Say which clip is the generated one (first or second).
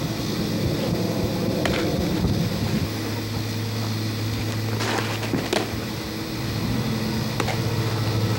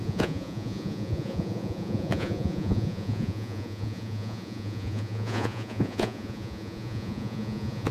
second